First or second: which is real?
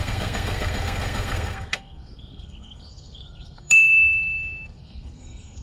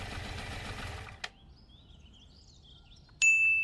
second